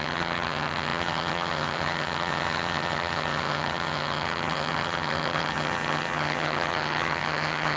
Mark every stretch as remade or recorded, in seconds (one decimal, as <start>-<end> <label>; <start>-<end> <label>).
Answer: 0.0-7.8 remade